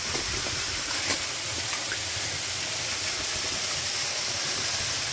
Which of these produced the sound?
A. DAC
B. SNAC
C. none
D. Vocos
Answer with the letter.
C